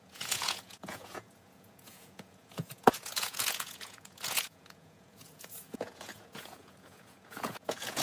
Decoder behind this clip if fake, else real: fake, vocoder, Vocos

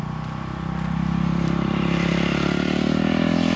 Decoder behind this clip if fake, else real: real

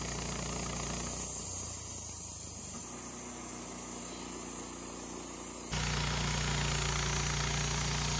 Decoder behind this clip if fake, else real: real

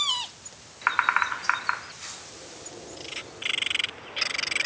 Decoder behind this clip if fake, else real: real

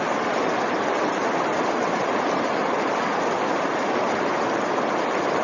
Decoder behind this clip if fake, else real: real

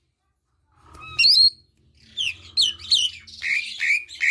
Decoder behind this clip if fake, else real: real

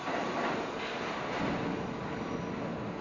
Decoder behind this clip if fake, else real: real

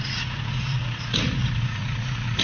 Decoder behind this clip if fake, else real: fake, vocoder, Vocos